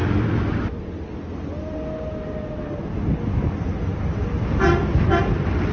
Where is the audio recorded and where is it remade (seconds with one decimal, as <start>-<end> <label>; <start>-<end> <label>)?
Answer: 0.0-3.9 recorded; 3.9-4.5 remade; 4.5-5.7 recorded